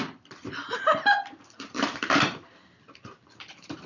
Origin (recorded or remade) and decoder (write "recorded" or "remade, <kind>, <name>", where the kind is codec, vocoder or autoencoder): remade, vocoder, BigVGAN v2